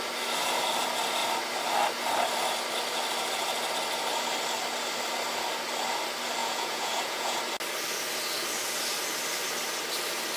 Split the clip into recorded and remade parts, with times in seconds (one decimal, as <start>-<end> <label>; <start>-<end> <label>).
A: 0.0-6.4 recorded; 6.4-7.4 remade; 7.4-10.4 recorded